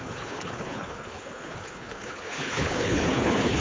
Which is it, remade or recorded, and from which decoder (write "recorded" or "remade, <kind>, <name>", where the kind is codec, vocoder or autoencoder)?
remade, codec, HILCodec